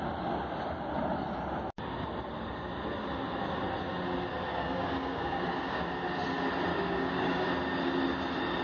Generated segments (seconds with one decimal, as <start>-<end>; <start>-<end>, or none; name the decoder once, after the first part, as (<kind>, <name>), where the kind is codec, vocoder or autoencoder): 4.5-5.8 (codec, DAC); 6.7-7.5